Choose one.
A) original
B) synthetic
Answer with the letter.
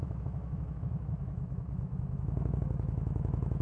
B